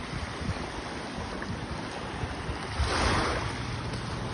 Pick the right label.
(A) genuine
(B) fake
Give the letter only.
A